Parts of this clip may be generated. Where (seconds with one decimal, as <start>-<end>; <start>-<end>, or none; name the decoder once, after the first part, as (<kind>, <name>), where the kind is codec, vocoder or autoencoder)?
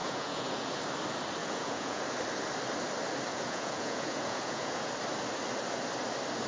0.0-0.8 (vocoder, Vocos); 1.4-2.0; 3.3-4.9